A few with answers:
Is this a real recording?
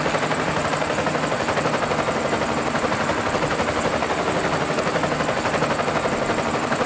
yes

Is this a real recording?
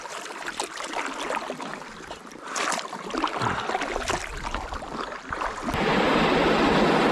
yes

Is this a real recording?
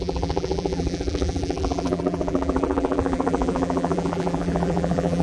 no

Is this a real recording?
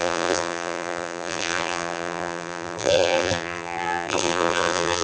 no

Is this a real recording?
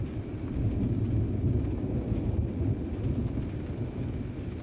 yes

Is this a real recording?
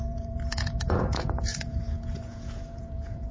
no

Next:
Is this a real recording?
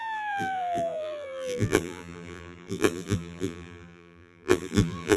no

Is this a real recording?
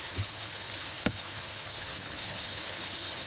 no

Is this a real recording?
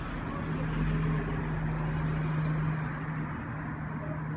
yes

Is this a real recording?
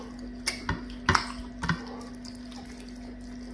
yes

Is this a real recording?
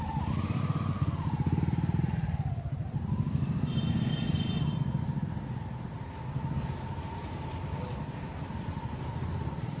yes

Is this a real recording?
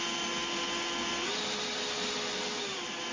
yes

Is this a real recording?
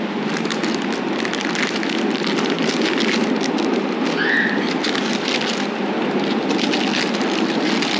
yes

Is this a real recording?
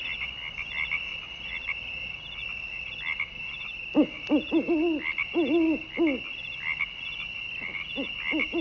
yes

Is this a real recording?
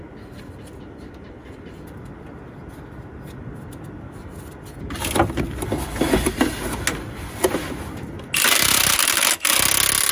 yes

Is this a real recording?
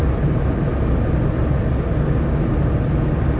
yes